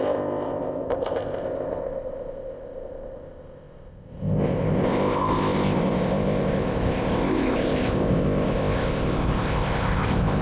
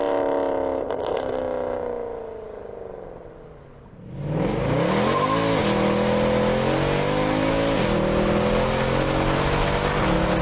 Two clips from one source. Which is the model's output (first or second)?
first